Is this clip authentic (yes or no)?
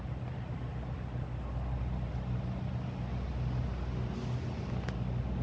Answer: yes